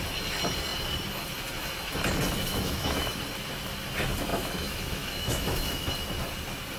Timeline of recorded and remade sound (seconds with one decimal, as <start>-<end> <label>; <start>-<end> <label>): 0.0-2.5 recorded; 2.5-3.2 remade; 3.2-4.3 recorded; 4.3-5.9 remade; 5.9-6.8 recorded